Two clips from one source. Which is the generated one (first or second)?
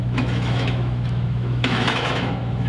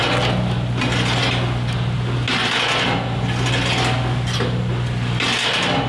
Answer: first